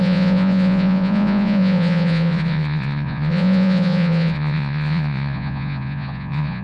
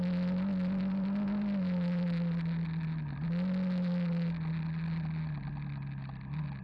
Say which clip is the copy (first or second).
first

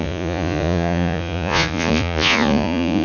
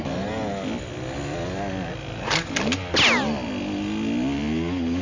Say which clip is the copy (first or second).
first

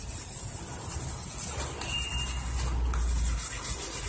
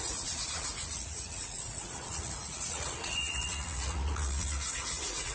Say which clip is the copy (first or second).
second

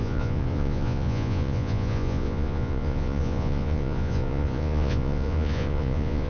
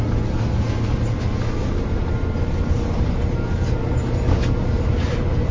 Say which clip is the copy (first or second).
first